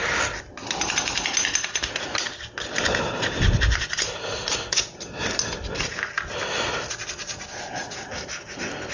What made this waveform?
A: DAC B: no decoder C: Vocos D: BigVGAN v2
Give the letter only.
B